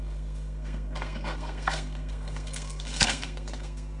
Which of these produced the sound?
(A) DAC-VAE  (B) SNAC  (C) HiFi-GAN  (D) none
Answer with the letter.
B